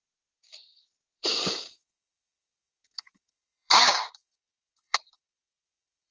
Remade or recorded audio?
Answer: remade